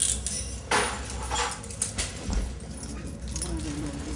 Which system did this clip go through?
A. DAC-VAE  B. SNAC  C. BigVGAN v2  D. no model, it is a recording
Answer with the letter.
D